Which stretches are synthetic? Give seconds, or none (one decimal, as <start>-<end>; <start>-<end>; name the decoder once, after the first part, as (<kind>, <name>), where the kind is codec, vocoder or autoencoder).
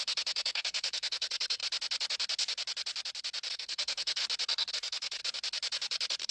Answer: 0.0-1.6 (codec, SNAC); 3.5-4.2; 4.7-5.2